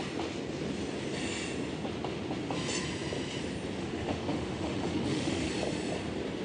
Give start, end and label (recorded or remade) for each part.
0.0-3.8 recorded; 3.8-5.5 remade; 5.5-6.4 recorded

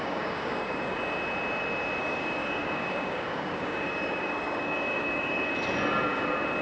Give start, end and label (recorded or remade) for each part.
0.0-1.0 remade; 1.0-2.0 recorded; 2.0-5.5 remade; 5.5-6.6 recorded

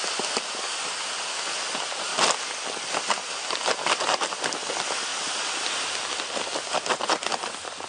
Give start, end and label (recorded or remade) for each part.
0.0-2.1 recorded; 2.1-3.0 remade; 3.0-5.1 recorded; 5.1-6.9 remade; 6.9-7.9 recorded

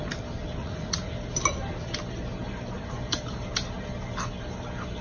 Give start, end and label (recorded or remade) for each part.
0.0-0.6 recorded; 0.6-1.1 remade; 1.1-5.0 recorded

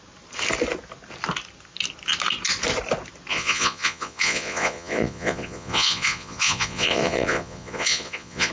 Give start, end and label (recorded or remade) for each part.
0.0-3.3 recorded; 3.3-8.5 remade

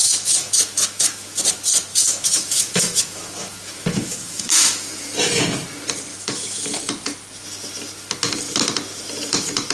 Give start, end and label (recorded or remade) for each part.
0.0-1.4 remade; 1.4-1.9 recorded; 1.9-4.9 remade; 4.9-6.1 recorded; 6.1-6.7 remade; 6.7-9.7 recorded

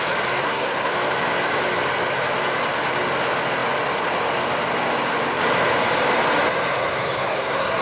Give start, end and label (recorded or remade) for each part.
0.0-0.4 recorded; 0.4-0.9 remade; 0.9-6.8 recorded; 6.8-7.8 remade

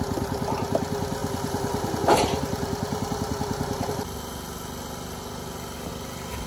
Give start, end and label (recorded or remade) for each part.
0.0-6.5 recorded